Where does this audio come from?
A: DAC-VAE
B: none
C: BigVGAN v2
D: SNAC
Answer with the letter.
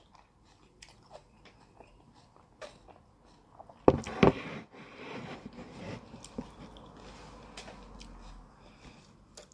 B